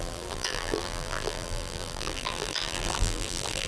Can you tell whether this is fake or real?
fake